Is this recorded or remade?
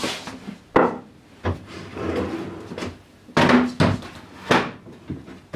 recorded